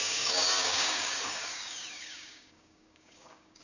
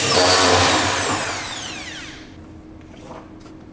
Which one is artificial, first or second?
first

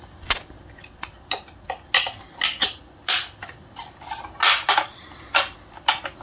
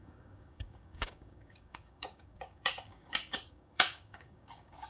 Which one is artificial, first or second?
second